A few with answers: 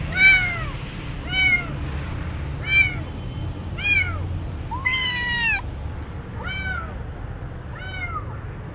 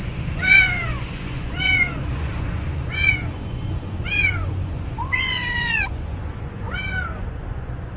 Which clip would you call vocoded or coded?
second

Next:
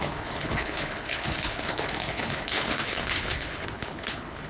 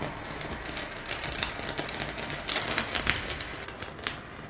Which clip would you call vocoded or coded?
first